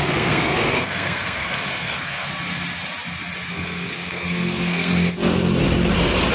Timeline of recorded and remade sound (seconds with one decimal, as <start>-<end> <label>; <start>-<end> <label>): 0.0-2.2 remade; 2.2-3.5 recorded; 3.5-4.9 remade; 4.9-6.3 recorded